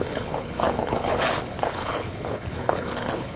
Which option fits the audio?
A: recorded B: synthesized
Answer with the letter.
B